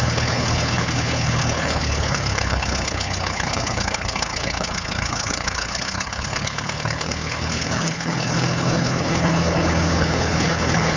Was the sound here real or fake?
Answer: fake